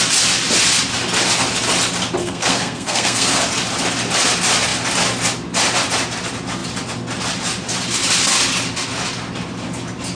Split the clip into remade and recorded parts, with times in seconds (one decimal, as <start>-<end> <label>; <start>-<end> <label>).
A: 0.0-2.2 recorded; 2.2-3.4 remade; 3.4-10.1 recorded